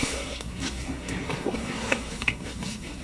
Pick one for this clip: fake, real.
fake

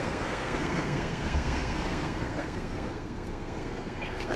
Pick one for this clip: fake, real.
fake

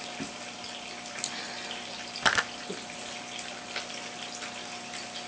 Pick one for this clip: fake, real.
real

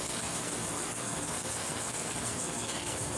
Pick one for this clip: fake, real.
fake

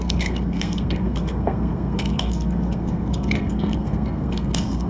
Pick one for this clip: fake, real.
fake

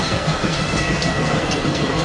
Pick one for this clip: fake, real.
fake